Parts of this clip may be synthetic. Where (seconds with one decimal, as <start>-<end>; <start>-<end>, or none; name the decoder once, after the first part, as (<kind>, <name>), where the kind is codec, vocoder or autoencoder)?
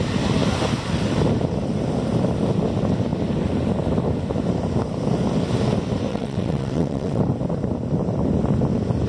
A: 6.1-7.2 (vocoder, WaveNeXt)